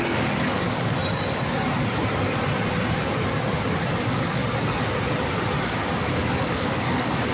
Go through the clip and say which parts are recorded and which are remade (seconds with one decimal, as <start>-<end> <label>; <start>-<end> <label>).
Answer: 0.0-1.0 remade; 1.0-4.0 recorded; 4.0-4.4 remade; 4.4-5.6 recorded; 5.6-7.3 remade